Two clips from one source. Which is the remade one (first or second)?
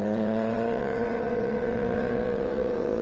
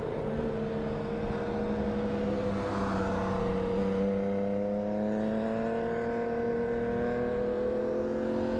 first